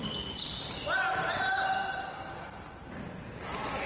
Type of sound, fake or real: real